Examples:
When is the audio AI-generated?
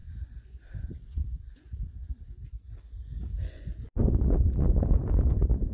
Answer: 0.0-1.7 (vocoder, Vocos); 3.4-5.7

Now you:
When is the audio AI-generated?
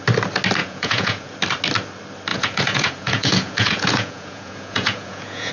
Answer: 0.6-1.3 (vocoder, Vocos); 2.3-5.5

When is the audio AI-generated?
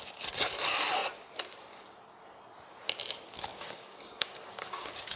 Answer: 3.5-5.2 (codec, DAC)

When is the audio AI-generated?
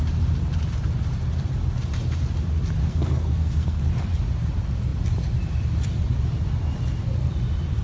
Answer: 2.8-3.8 (codec, SNAC)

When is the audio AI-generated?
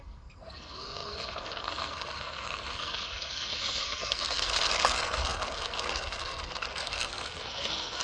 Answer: 0.0-8.0 (codec, SNAC)